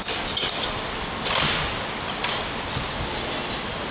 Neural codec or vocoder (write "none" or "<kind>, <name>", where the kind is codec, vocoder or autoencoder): none